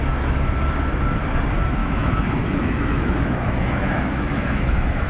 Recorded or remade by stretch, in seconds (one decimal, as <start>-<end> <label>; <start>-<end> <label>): 0.0-1.8 recorded; 1.8-5.1 remade